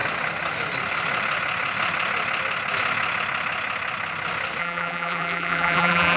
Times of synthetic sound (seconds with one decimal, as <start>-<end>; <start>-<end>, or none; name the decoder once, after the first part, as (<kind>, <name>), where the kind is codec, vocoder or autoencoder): 4.6-6.2 (vocoder, BigVGAN v2)